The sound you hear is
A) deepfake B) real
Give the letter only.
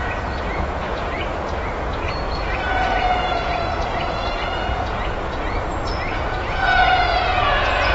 A